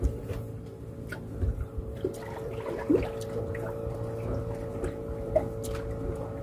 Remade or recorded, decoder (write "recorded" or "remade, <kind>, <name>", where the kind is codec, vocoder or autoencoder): recorded